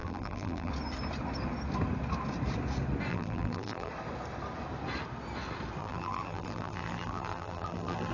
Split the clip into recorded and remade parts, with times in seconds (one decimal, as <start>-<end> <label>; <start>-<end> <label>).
0.0-0.7 remade; 0.7-3.1 recorded; 3.1-3.9 remade; 3.9-5.8 recorded; 5.8-8.1 remade